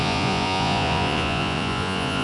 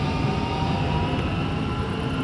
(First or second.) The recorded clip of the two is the second